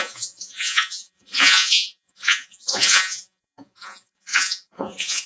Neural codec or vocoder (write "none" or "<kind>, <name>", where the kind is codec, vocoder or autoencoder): vocoder, Vocos